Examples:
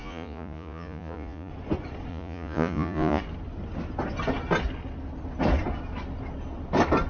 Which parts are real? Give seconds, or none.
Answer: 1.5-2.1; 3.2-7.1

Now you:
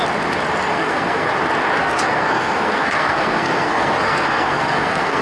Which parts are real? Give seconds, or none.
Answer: 0.0-0.7; 1.3-1.8

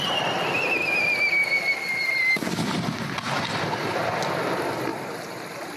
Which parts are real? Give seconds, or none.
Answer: 0.0-5.8